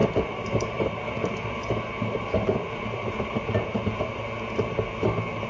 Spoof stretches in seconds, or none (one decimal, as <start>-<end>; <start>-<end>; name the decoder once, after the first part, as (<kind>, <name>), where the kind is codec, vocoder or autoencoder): 0.0-3.3 (vocoder, BigVGAN v2)